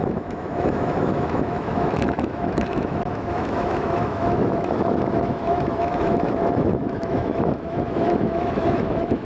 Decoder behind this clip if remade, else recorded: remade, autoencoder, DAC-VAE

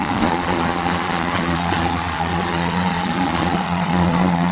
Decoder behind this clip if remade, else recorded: remade, vocoder, Vocos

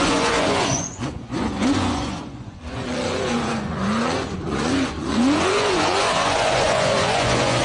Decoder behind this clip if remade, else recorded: remade, vocoder, Vocos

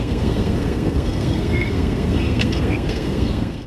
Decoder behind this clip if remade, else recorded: remade, codec, SNAC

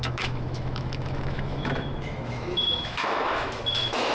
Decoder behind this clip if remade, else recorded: remade, autoencoder, DAC-VAE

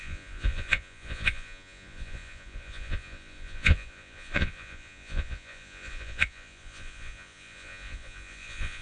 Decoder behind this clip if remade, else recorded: remade, vocoder, Vocos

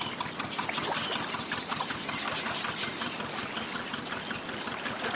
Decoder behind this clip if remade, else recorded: recorded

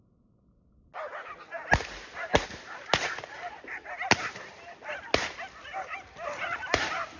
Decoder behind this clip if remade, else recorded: recorded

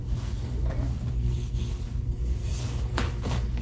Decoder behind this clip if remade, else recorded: remade, codec, SNAC